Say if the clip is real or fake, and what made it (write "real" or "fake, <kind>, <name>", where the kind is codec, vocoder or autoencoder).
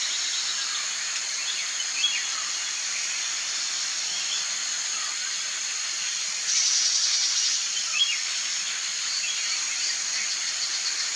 real